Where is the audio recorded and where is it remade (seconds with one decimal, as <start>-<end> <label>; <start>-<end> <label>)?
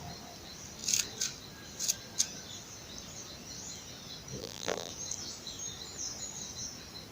0.0-4.4 recorded; 4.4-4.9 remade; 4.9-7.1 recorded